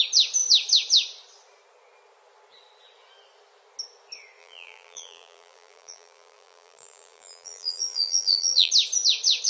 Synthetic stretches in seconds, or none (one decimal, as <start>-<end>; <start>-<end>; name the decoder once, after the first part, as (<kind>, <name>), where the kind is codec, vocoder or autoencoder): 4.4-8.7 (vocoder, BigVGAN v2)